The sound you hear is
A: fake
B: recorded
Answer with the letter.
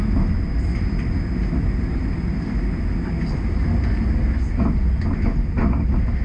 B